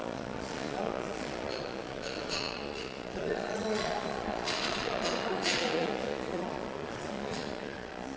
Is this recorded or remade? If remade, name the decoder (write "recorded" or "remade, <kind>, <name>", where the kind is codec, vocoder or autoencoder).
remade, vocoder, Vocos